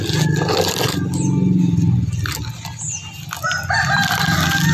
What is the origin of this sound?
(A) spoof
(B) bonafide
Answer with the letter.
B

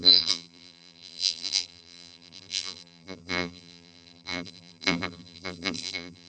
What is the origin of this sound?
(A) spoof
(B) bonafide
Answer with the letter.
A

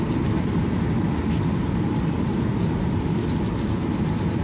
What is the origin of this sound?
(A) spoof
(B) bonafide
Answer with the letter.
B